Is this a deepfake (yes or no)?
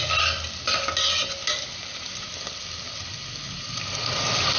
no